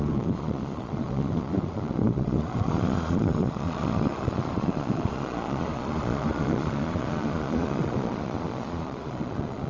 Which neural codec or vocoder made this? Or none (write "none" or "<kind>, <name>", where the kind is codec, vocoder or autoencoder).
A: vocoder, Vocos